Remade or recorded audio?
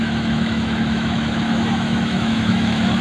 remade